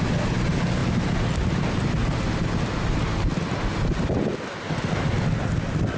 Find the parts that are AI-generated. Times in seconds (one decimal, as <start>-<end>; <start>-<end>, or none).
none